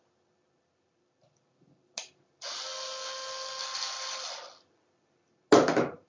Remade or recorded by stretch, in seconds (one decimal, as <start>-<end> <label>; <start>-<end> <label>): 0.0-6.1 recorded